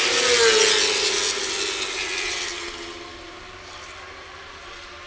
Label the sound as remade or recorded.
recorded